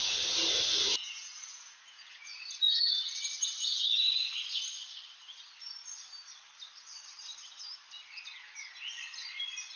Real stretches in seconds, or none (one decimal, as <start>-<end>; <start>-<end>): 0.0-1.0; 2.9-9.8